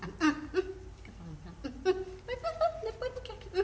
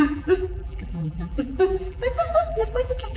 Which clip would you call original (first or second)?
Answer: first